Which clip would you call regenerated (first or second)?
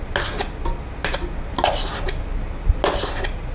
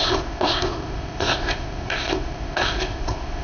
second